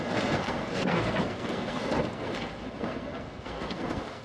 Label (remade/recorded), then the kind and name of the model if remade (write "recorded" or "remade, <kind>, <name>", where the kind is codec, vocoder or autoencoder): remade, codec, SNAC